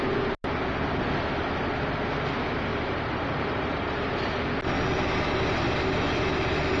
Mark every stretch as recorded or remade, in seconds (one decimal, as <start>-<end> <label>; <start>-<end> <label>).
0.0-2.7 recorded; 2.7-4.4 remade; 4.4-6.8 recorded